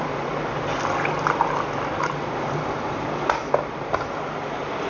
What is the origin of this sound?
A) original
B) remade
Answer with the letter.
B